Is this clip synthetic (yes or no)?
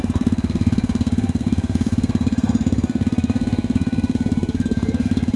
yes